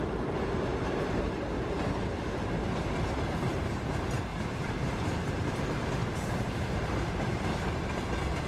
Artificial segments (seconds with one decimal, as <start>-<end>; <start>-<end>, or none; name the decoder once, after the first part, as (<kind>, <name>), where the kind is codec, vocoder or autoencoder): 0.7-1.3 (vocoder, BigVGAN v2); 4.3-5.3; 6.0-7.8